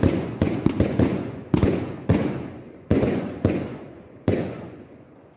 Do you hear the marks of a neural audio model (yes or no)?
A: yes